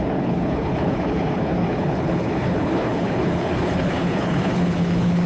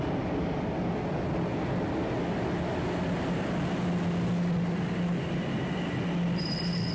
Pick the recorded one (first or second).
second